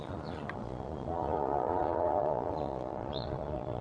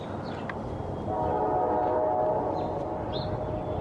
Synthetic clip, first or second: first